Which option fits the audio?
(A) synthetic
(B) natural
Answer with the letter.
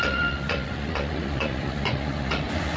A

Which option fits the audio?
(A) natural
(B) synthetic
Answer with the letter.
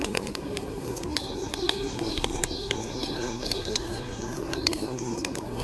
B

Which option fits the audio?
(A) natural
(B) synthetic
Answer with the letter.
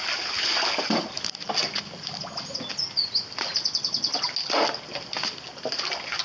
A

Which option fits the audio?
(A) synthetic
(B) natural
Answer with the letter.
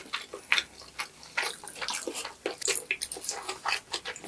B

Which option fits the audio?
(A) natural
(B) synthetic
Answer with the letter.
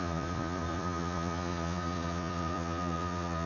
B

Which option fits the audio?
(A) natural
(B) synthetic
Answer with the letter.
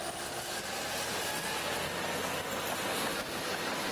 A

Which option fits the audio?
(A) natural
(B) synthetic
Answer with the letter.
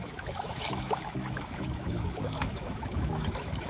B